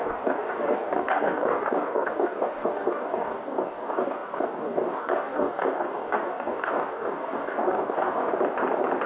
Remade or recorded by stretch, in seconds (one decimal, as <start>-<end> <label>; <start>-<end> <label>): 0.0-8.3 remade; 8.3-9.1 recorded